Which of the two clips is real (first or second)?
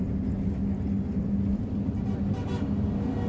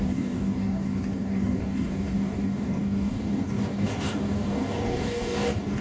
first